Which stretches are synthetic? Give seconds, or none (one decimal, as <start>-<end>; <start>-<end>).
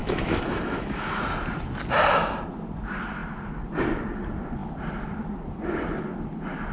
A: 0.0-1.2